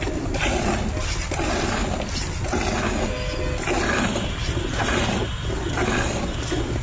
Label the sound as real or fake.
real